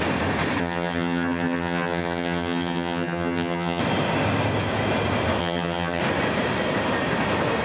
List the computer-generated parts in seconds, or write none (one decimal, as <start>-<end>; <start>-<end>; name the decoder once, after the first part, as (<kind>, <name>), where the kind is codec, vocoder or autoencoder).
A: 0.6-3.8 (vocoder, HiFi-GAN); 5.4-6.0

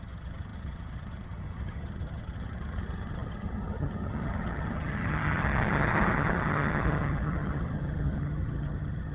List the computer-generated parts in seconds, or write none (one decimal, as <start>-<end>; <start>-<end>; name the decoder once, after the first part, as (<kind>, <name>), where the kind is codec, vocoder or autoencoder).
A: 0.0-9.1 (vocoder, HiFi-GAN)

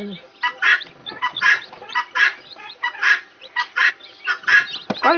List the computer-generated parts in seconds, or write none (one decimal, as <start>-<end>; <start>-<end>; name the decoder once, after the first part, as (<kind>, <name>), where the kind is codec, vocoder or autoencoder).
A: 1.0-3.9 (vocoder, Vocos)